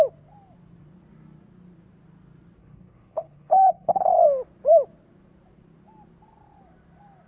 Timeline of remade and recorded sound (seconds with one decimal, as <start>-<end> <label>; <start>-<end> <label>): 0.0-2.6 recorded; 2.6-4.2 remade; 4.2-7.3 recorded